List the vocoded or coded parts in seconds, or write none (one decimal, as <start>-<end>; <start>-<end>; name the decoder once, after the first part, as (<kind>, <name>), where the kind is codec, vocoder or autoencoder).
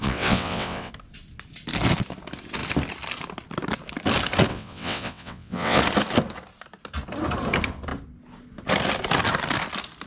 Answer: 0.0-0.9 (vocoder, WaveNeXt); 4.5-5.8